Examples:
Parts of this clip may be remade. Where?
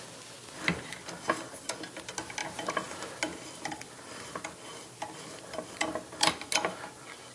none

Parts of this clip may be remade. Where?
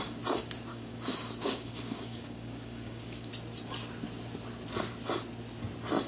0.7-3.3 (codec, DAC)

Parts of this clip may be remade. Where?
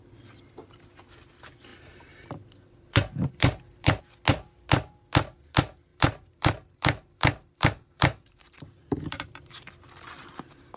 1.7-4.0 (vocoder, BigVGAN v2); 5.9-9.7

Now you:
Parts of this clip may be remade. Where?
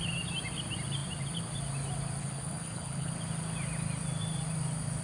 2.2-3.1 (codec, HILCodec)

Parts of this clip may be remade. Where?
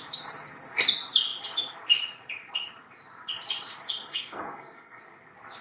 4.0-5.0 (codec, SNAC)